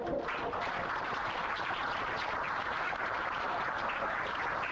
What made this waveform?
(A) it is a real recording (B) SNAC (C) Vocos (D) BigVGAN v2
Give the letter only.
A